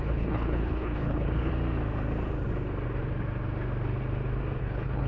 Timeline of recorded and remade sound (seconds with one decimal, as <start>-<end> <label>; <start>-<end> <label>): 0.0-1.5 remade; 1.5-4.6 recorded; 4.6-5.1 remade